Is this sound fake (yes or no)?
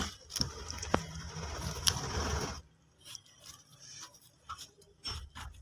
no